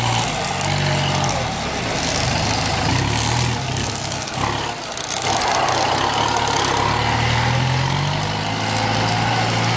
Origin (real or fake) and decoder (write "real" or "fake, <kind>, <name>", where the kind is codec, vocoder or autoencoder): real